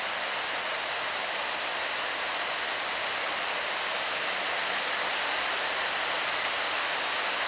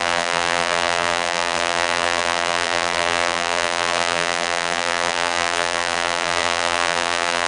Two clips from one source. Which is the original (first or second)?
first